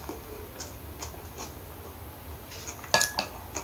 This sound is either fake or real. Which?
real